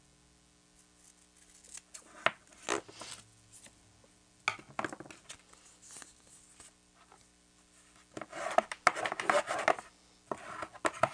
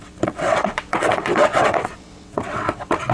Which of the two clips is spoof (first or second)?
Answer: second